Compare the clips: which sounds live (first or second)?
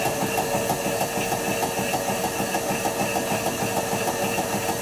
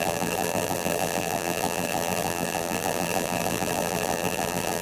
first